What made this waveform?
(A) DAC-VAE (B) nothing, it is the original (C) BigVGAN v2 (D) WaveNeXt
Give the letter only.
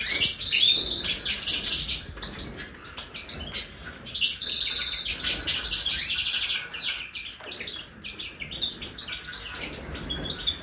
B